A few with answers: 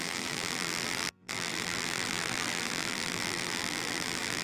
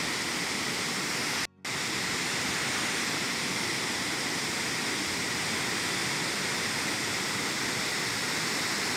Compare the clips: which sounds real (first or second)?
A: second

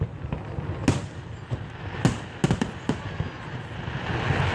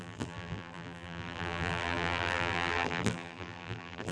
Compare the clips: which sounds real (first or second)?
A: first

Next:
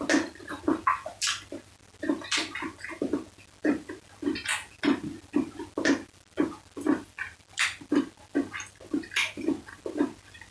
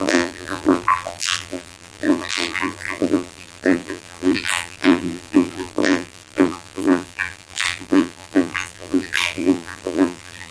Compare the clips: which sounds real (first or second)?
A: first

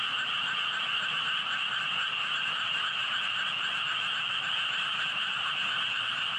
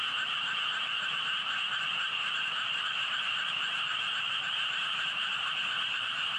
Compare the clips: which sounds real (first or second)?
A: first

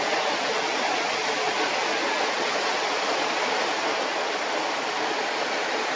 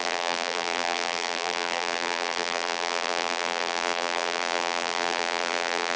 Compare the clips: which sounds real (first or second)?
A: first